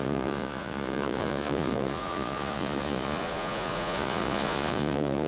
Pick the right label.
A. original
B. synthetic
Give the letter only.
B